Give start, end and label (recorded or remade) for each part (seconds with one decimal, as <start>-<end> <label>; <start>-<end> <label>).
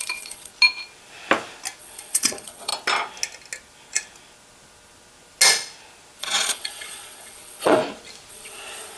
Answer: 0.0-0.5 remade; 0.5-1.8 recorded; 1.8-2.7 remade; 2.7-6.2 recorded; 6.2-7.8 remade; 7.8-8.3 recorded; 8.3-9.0 remade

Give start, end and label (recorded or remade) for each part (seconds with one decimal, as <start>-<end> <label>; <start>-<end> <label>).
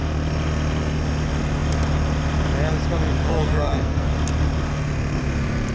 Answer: 0.0-3.2 recorded; 3.2-4.1 remade; 4.1-5.7 recorded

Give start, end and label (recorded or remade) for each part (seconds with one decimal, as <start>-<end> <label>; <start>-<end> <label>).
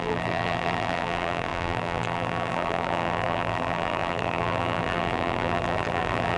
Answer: 0.0-6.4 remade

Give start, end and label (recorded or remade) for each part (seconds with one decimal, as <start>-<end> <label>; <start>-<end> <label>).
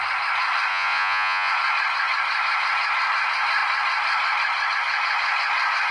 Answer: 0.0-0.7 recorded; 0.7-1.5 remade; 1.5-5.9 recorded